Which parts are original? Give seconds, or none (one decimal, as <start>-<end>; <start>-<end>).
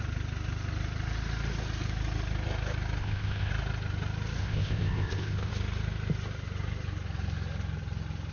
0.0-3.0; 3.5-4.4; 5.5-8.3